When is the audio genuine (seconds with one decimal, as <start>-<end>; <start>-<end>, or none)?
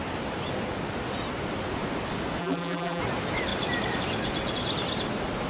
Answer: 0.0-2.4; 3.0-5.5